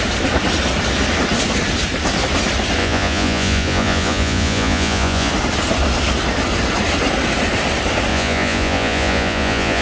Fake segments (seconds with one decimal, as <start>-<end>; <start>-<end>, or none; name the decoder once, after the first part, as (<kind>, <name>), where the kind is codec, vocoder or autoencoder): 2.8-5.3 (vocoder, Vocos); 8.1-9.8